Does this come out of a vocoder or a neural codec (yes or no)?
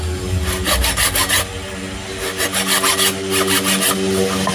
no